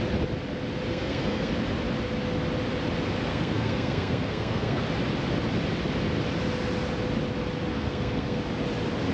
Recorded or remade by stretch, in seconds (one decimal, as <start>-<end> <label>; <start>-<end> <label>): 0.0-0.9 recorded; 0.9-1.5 remade; 1.5-3.3 recorded; 3.3-4.8 remade; 4.8-7.7 recorded; 7.7-8.4 remade; 8.4-9.1 recorded